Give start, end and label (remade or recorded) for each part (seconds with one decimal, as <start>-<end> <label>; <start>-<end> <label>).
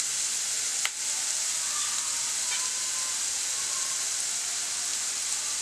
0.0-5.6 recorded